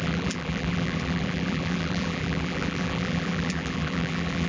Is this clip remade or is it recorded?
remade